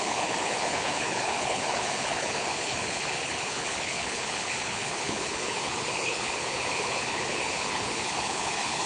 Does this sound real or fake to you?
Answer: fake